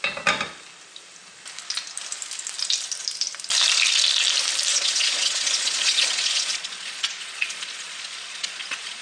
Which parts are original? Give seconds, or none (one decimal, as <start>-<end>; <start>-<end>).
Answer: 0.0-4.7